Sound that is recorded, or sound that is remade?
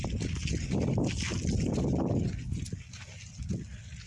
recorded